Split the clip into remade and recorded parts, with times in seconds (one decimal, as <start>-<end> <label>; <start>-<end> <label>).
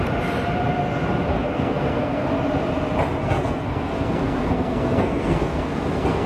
0.0-1.3 recorded; 1.3-2.3 remade; 2.3-3.2 recorded; 3.2-6.3 remade